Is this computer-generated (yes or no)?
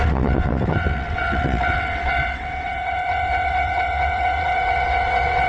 yes